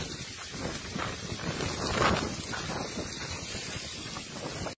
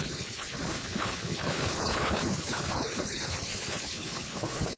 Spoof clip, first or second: second